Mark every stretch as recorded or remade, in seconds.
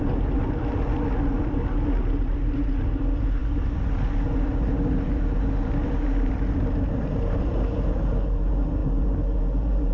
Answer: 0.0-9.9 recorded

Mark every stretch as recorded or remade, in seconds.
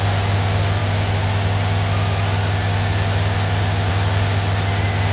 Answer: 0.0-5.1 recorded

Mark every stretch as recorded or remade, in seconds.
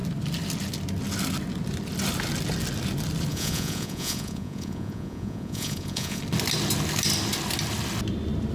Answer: 0.0-3.3 recorded; 3.3-6.2 remade; 6.2-8.5 recorded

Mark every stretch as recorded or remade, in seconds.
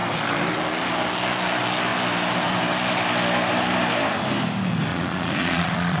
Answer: 0.0-4.9 recorded; 4.9-6.0 remade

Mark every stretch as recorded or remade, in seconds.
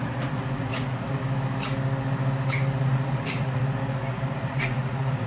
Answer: 0.0-1.2 remade; 1.2-2.8 recorded; 2.8-3.6 remade; 3.6-4.3 recorded; 4.3-5.3 remade